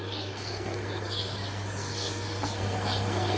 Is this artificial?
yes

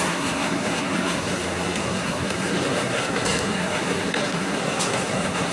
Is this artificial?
yes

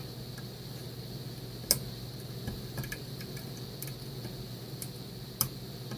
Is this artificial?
no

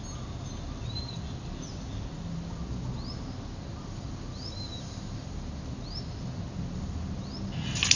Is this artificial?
no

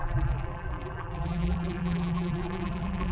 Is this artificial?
yes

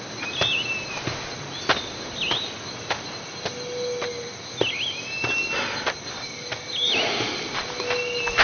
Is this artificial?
no